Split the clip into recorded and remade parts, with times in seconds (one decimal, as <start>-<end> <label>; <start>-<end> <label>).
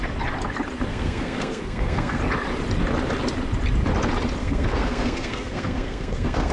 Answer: 0.0-0.9 recorded; 0.9-2.2 remade; 2.2-4.4 recorded; 4.4-6.5 remade